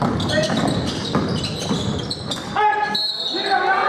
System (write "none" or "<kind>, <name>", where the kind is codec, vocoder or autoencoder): none